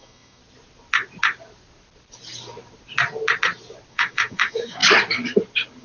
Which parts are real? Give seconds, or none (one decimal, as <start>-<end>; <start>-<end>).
0.4-3.9; 4.8-5.8